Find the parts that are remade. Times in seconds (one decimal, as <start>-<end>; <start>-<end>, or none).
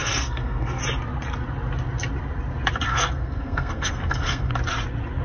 0.0-0.8; 2.9-4.5